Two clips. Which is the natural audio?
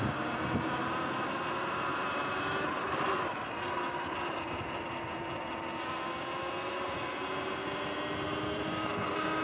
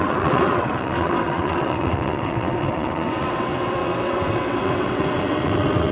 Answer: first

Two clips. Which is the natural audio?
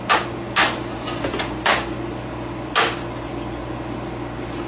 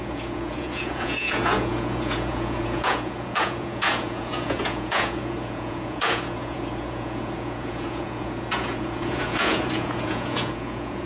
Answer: first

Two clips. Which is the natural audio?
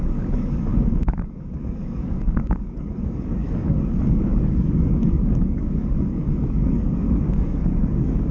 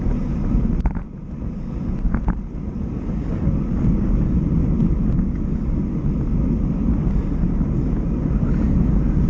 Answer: second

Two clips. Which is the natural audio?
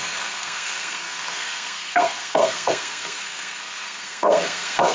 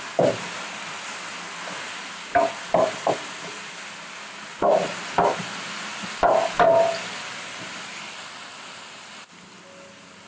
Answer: second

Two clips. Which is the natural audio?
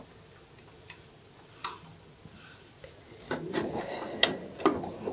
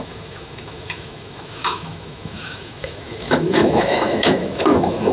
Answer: first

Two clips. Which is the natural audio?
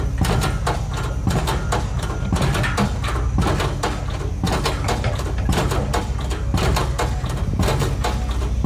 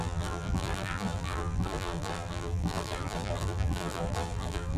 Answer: first